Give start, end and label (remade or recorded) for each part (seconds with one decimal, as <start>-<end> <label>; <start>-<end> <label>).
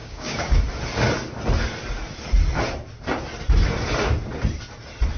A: 0.0-0.6 remade; 0.6-5.2 recorded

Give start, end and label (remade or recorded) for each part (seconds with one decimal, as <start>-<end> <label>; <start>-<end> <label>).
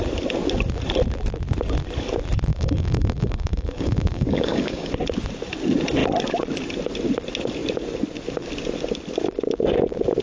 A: 0.0-2.5 recorded; 2.5-4.9 remade; 4.9-10.2 recorded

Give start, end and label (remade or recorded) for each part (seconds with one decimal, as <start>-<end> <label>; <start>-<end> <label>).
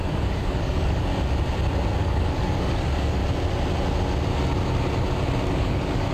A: 0.0-1.1 remade; 1.1-2.0 recorded; 2.0-3.2 remade; 3.2-5.5 recorded; 5.5-6.1 remade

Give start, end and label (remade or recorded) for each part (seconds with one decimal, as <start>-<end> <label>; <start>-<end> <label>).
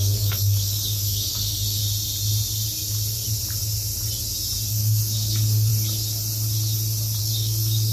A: 0.0-1.8 remade; 1.8-4.7 recorded; 4.7-5.7 remade; 5.7-7.2 recorded; 7.2-7.9 remade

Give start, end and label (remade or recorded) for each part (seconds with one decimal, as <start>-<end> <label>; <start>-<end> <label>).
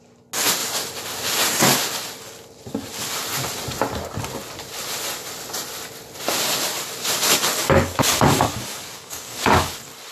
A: 0.0-7.6 recorded; 7.6-9.7 remade; 9.7-10.1 recorded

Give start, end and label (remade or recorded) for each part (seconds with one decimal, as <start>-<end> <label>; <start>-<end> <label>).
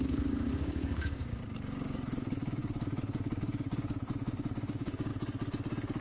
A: 0.0-5.1 remade; 5.1-6.0 recorded